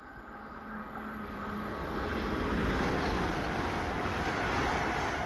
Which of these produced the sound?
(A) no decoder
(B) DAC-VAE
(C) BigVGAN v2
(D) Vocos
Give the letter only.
A